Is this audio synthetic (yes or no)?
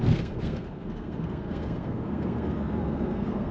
yes